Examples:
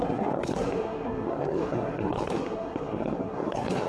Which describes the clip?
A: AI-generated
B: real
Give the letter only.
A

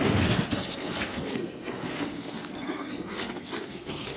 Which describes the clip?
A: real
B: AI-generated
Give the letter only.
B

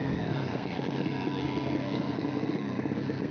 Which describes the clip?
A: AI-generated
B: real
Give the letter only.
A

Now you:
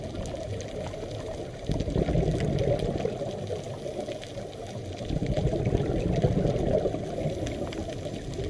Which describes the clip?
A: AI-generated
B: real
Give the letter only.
B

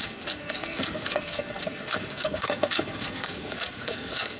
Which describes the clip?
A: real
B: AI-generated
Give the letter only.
B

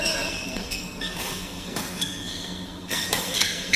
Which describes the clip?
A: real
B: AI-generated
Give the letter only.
B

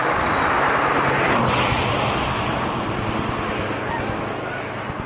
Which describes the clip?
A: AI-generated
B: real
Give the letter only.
B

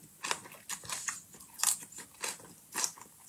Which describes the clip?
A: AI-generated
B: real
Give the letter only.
B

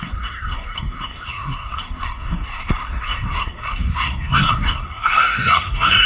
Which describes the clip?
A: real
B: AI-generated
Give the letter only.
B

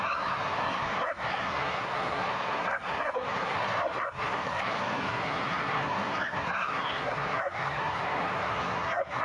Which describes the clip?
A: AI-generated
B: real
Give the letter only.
A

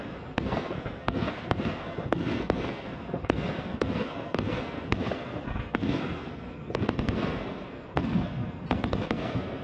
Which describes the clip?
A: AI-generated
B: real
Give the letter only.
A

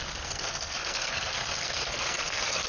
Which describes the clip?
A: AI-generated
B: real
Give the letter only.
A